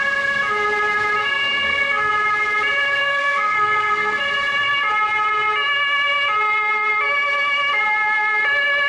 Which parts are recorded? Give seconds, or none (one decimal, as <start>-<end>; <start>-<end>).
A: 0.0-1.2; 2.1-3.0; 4.2-8.9